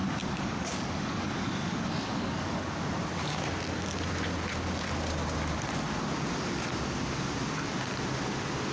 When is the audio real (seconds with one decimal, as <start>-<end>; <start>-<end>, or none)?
2.7-8.7